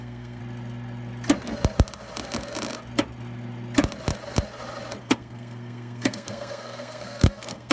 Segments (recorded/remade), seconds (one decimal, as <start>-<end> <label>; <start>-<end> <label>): 0.0-0.4 remade; 0.4-5.0 recorded; 5.0-7.7 remade